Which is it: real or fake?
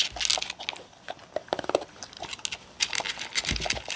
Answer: real